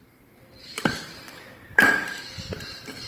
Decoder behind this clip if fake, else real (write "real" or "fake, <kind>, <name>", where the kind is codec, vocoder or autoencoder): fake, vocoder, BigVGAN v2